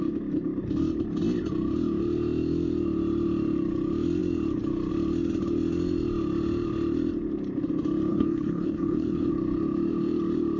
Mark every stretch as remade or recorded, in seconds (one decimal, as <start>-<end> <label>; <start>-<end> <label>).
0.0-8.1 recorded; 8.1-9.3 remade; 9.3-10.6 recorded